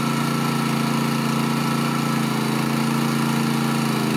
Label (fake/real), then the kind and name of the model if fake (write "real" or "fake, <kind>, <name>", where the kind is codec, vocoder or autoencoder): real